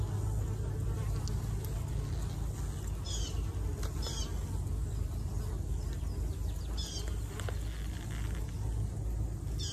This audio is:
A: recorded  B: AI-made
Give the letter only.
A